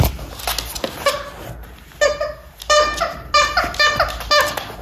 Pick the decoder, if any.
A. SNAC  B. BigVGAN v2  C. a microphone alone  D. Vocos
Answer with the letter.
C